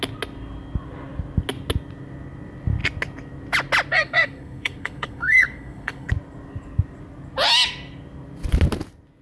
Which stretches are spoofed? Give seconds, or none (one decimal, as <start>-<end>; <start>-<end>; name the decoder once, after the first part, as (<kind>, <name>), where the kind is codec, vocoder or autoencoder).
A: 3.9-6.1 (codec, SNAC)